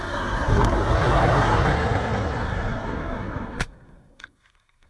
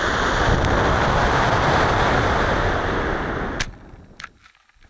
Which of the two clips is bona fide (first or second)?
second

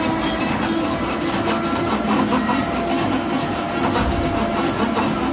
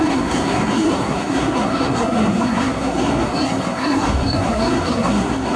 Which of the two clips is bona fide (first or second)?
first